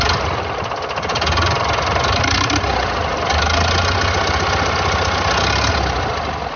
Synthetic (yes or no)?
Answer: no